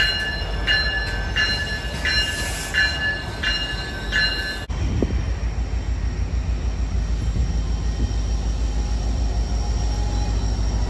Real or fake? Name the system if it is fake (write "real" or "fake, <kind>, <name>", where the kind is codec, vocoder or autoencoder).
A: real